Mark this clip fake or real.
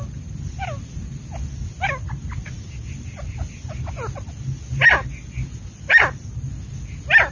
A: real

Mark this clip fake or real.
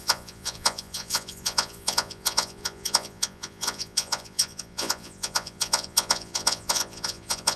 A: fake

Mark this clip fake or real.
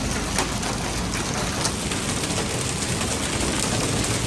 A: real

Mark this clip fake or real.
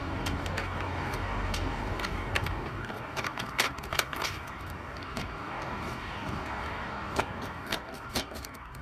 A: fake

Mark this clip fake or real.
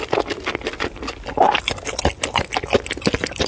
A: real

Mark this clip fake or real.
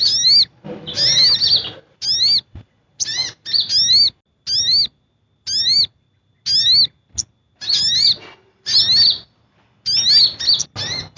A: real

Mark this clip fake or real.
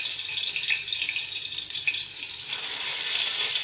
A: real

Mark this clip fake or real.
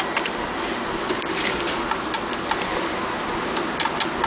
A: real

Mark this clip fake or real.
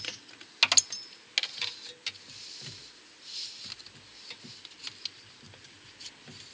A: real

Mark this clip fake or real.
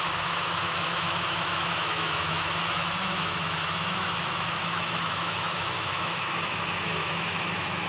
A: fake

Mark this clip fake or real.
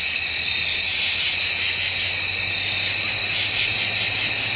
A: real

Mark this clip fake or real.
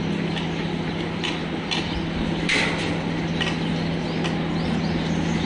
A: real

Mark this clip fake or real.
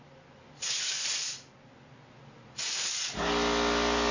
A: real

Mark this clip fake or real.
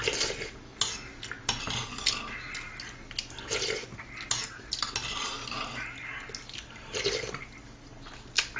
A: real